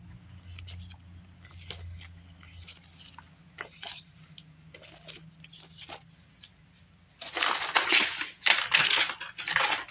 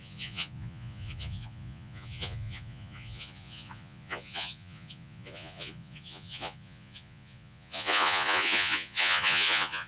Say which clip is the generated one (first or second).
second